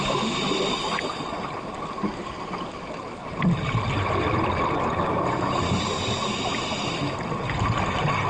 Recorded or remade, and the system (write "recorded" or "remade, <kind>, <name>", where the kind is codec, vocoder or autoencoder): recorded